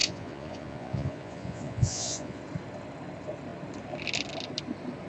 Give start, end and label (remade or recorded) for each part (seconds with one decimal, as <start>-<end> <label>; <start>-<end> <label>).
0.0-2.4 remade; 2.4-5.1 recorded